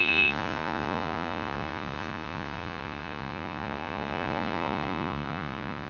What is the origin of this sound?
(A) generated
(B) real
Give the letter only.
A